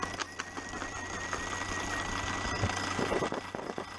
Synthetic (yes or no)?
no